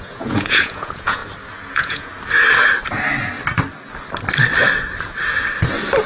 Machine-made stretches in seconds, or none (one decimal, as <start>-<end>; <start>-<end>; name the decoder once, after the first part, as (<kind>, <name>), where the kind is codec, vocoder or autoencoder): 0.0-1.2 (vocoder, Vocos); 1.7-2.1